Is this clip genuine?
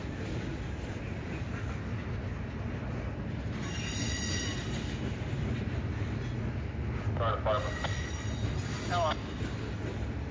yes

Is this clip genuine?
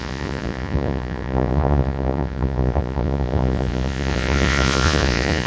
no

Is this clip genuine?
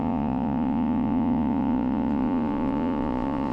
no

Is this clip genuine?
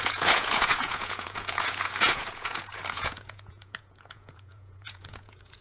no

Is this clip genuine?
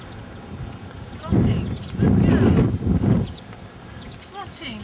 yes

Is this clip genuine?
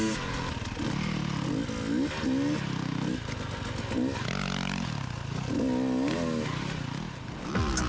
yes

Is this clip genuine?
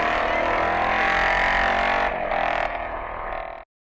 yes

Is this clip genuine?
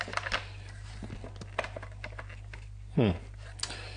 yes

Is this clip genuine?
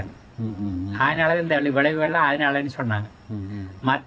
no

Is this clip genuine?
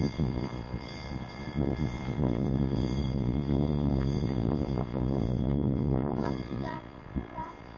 no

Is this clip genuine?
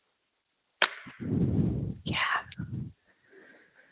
yes